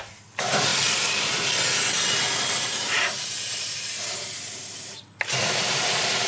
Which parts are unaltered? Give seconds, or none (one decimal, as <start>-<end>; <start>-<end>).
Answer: 0.0-6.3